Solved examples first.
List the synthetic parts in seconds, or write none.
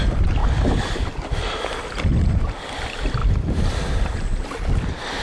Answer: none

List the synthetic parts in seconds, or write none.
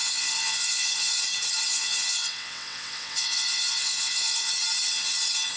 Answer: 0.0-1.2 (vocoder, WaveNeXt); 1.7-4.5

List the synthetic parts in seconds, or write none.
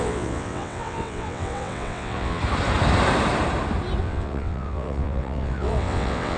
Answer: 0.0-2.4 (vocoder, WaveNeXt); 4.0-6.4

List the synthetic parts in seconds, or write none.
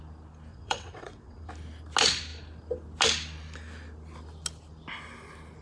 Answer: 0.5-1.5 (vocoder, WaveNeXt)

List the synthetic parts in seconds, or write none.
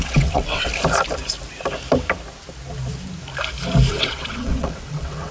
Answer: 0.0-0.7 (vocoder, WaveNeXt); 3.9-5.3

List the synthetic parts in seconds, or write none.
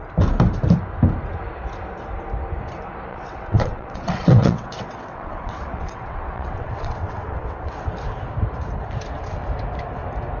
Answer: 3.1-7.8 (vocoder, WaveNeXt)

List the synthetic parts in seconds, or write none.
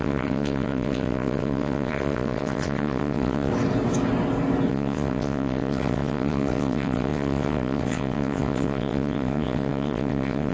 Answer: 0.0-3.5 (vocoder, WaveNeXt); 4.7-10.5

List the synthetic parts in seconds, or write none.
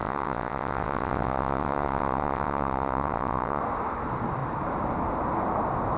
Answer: 0.0-3.6 (vocoder, WaveNeXt)